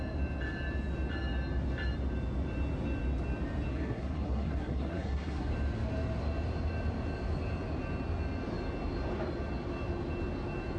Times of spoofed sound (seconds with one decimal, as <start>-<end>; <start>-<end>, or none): 3.7-5.5